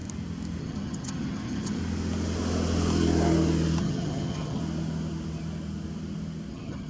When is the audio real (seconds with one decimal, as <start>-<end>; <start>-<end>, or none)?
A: 0.0-0.6; 1.8-3.8; 4.6-6.5